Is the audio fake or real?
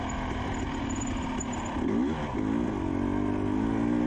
real